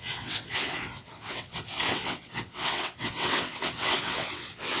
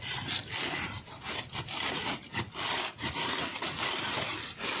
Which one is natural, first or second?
second